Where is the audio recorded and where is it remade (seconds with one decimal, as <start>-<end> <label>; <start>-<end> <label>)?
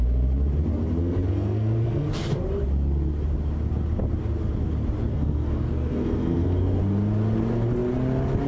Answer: 0.0-1.0 recorded; 1.0-2.3 remade; 2.3-5.1 recorded; 5.1-6.8 remade; 6.8-8.5 recorded